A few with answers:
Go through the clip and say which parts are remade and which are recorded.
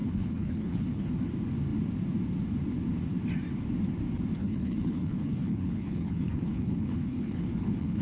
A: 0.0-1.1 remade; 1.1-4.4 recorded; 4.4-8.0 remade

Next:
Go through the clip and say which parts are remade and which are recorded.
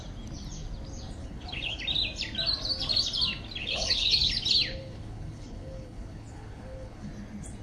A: 0.0-1.2 recorded; 1.2-1.8 remade; 1.8-3.6 recorded; 3.6-4.3 remade; 4.3-4.7 recorded; 4.7-7.1 remade; 7.1-7.6 recorded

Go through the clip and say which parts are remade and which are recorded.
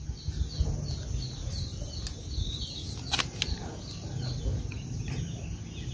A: 0.0-5.9 recorded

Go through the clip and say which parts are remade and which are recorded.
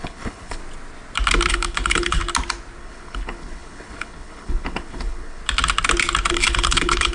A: 0.0-0.6 remade; 0.6-1.5 recorded; 1.5-2.2 remade; 2.2-2.8 recorded; 2.8-5.4 remade; 5.4-6.3 recorded; 6.3-7.1 remade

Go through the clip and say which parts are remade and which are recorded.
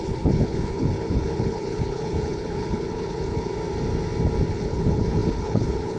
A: 0.0-3.5 remade; 3.5-4.5 recorded; 4.5-6.0 remade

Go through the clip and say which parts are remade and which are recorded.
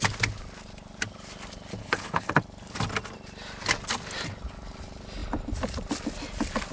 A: 0.0-1.8 recorded; 1.8-2.4 remade; 2.4-6.7 recorded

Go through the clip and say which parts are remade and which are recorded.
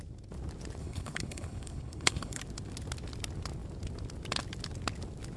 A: 0.0-0.8 recorded; 0.8-2.4 remade; 2.4-5.4 recorded